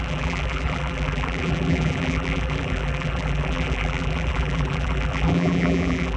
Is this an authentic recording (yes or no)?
no